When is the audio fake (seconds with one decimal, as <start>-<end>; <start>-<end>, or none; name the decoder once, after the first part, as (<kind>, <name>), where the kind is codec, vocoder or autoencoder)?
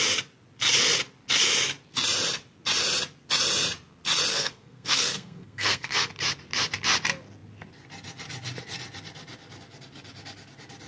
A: 4.3-6.1 (codec, SNAC)